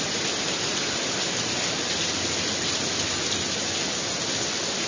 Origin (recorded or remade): recorded